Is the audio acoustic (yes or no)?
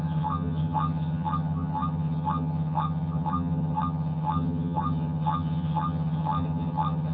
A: no